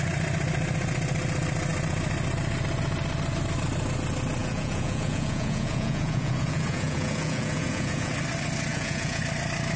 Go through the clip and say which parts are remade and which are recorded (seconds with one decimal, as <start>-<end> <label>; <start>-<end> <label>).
0.0-4.4 recorded; 4.4-8.1 remade; 8.1-8.7 recorded; 8.7-9.2 remade; 9.2-9.8 recorded